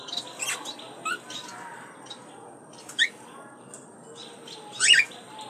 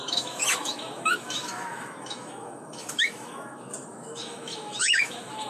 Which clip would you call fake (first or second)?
second